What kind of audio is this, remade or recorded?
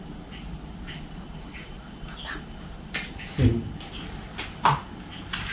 recorded